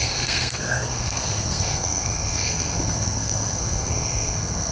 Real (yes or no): no